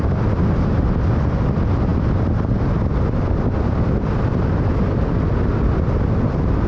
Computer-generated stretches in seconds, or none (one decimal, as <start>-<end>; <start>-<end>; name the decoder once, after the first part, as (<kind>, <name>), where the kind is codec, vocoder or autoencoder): none